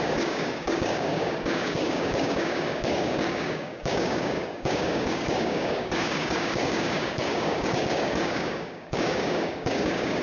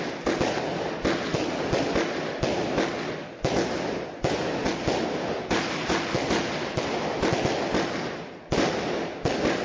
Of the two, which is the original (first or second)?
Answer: second